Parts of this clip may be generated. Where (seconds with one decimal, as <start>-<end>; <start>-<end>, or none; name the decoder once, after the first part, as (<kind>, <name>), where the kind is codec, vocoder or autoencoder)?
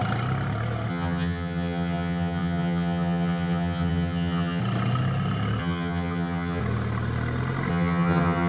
0.9-4.6 (vocoder, HiFi-GAN); 5.6-6.6; 7.7-8.5